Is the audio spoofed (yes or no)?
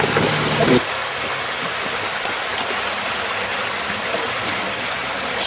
no